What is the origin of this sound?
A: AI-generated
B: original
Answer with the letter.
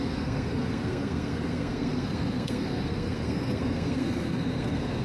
A